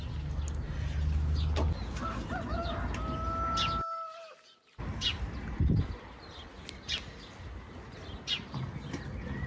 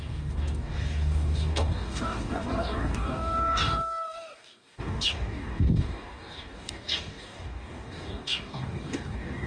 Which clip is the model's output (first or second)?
second